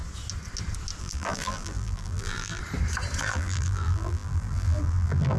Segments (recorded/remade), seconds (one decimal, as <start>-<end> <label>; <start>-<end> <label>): 0.0-1.0 recorded; 1.0-2.6 remade; 2.6-3.2 recorded; 3.2-5.4 remade